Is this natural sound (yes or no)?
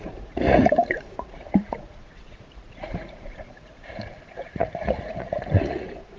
no